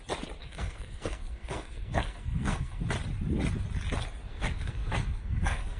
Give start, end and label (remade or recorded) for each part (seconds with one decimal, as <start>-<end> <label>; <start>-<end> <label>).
0.0-0.4 recorded; 0.4-2.8 remade; 2.8-4.3 recorded; 4.3-5.8 remade